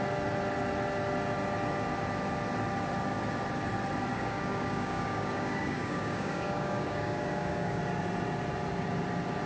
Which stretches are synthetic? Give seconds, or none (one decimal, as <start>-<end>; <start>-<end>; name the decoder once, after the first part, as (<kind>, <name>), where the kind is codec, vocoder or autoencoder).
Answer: 4.1-7.8 (codec, DAC)

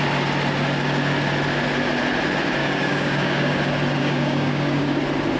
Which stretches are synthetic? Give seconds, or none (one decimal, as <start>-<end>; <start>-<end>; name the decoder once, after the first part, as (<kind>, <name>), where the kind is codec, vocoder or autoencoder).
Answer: 2.6-3.6 (codec, DAC); 4.0-5.0

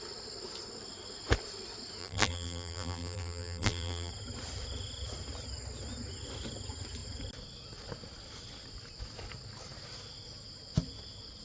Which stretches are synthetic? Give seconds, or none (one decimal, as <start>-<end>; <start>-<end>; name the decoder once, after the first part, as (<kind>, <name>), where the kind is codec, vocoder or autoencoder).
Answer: 2.0-4.1 (vocoder, BigVGAN v2)

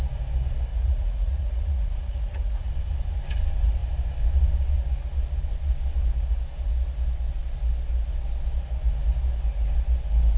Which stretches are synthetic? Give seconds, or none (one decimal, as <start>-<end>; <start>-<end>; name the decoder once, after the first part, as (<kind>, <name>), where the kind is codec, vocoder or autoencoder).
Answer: 0.7-2.7 (vocoder, Vocos)

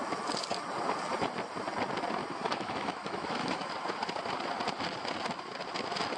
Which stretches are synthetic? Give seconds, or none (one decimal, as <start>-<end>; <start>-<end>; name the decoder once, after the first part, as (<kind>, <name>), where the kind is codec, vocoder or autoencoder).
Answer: 2.2-3.7 (autoencoder, DAC-VAE)

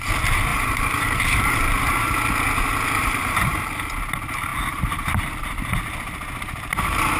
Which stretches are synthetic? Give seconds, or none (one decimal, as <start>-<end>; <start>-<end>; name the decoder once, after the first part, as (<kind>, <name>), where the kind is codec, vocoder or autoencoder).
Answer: 0.5-1.7 (vocoder, BigVGAN v2); 3.0-3.7

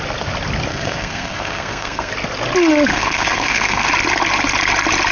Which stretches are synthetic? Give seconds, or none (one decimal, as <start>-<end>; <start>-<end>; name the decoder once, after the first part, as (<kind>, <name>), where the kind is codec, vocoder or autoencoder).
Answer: 0.7-2.1 (codec, SNAC); 2.9-3.9